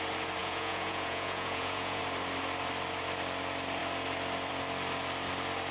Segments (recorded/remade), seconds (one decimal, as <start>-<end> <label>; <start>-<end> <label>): 0.0-0.4 recorded; 0.4-2.0 remade; 2.0-5.7 recorded